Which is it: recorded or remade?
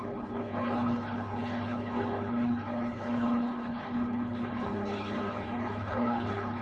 remade